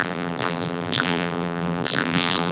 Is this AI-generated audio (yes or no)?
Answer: yes